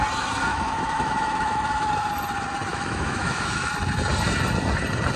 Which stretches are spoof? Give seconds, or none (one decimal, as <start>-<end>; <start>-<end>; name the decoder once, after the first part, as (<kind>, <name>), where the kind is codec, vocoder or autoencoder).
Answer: 0.5-1.9 (autoencoder, DAC-VAE); 2.7-3.7